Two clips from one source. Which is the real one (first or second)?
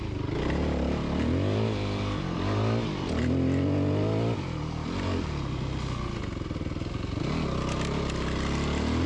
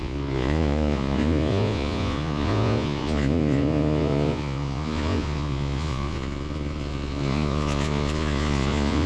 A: first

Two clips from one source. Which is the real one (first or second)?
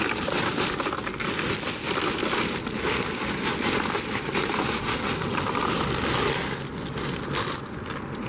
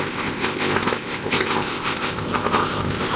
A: first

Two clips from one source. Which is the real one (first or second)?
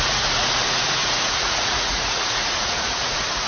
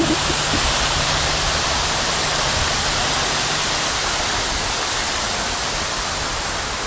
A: second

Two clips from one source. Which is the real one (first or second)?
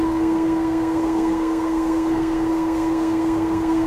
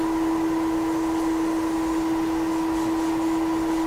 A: second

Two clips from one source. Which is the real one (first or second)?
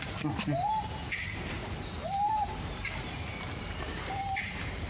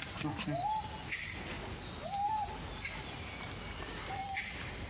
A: second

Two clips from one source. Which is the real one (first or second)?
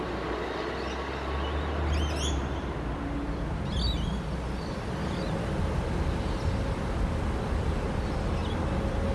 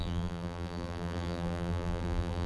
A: first